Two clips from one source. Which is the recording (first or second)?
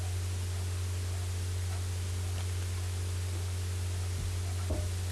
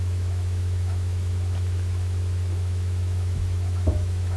first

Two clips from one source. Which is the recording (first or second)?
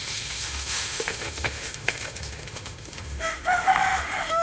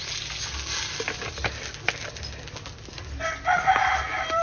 second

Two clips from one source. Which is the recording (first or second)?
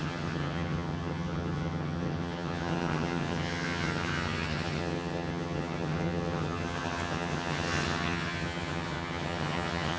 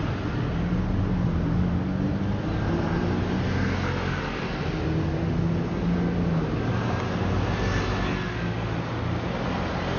second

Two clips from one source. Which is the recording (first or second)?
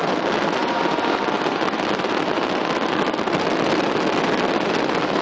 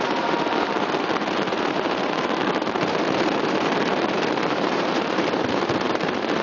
first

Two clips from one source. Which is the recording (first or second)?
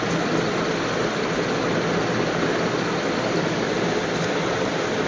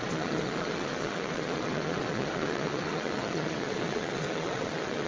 first